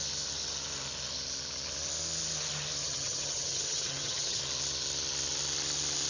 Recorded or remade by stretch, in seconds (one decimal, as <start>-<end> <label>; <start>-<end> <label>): 0.0-2.8 recorded; 2.8-4.4 remade; 4.4-6.1 recorded